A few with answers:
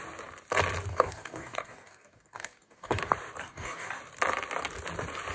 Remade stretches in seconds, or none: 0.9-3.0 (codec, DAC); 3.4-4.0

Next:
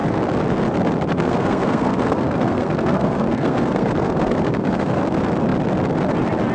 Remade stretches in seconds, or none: 1.1-5.0 (codec, SNAC)